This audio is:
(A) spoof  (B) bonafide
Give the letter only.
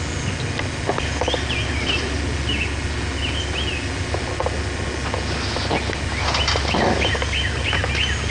B